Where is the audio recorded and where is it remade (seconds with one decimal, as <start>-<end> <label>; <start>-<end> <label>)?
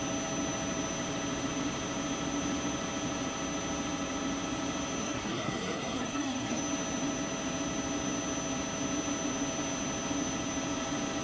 0.0-5.0 recorded; 5.0-6.6 remade; 6.6-11.2 recorded